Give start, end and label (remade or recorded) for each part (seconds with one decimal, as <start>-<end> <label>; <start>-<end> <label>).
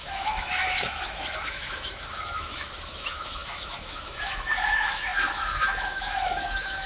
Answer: 0.0-6.9 remade